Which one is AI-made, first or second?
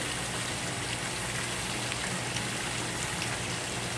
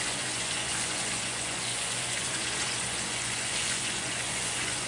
second